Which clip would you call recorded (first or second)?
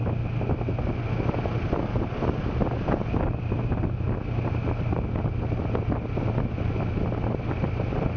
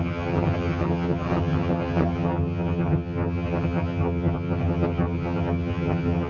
first